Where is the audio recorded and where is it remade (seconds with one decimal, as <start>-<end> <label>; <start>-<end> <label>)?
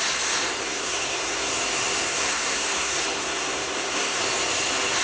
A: 0.0-0.6 recorded; 0.6-1.5 remade; 1.5-2.1 recorded; 2.1-4.2 remade; 4.2-5.0 recorded